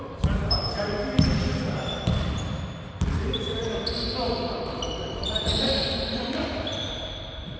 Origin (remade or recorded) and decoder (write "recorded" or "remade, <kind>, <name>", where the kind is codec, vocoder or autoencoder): recorded